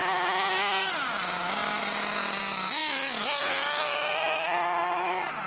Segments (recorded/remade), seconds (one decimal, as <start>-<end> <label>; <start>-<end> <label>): 0.0-5.5 recorded